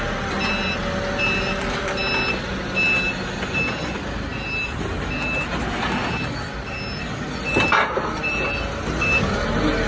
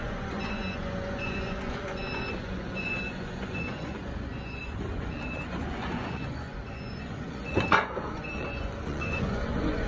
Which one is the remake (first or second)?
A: second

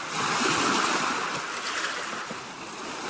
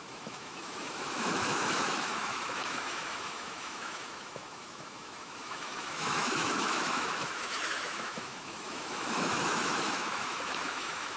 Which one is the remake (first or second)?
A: second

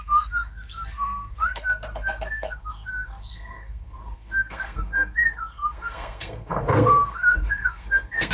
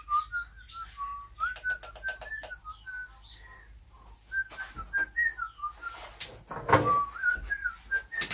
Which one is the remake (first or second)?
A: first